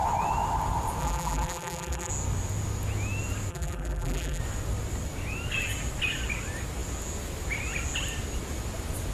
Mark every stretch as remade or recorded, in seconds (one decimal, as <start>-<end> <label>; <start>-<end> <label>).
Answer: 0.0-1.0 recorded; 1.0-2.1 remade; 2.1-3.5 recorded; 3.5-4.4 remade; 4.4-9.1 recorded

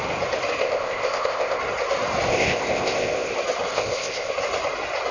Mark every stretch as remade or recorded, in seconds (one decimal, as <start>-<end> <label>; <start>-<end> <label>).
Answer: 0.0-0.6 recorded; 0.6-1.6 remade; 1.6-2.3 recorded; 2.3-3.3 remade; 3.3-3.7 recorded; 3.7-4.3 remade; 4.3-5.1 recorded